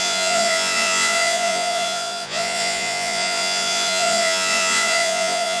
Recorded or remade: remade